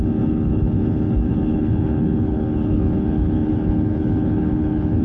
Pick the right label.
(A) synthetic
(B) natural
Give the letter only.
A